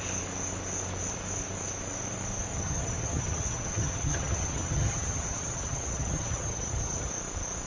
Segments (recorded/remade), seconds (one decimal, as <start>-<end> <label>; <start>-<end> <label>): 0.0-2.5 recorded; 2.5-7.1 remade; 7.1-7.7 recorded